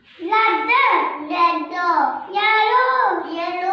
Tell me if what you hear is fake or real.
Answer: real